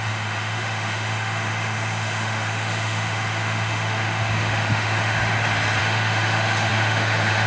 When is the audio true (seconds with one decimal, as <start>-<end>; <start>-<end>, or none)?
5.2-5.8

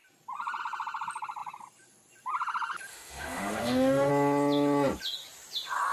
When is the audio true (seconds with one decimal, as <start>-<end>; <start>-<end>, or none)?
0.0-2.9; 4.1-5.9

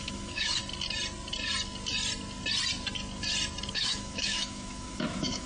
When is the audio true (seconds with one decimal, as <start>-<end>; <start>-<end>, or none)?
0.6-3.7

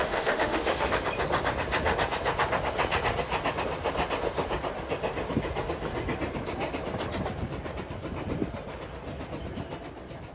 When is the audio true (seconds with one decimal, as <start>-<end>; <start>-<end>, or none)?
0.9-10.3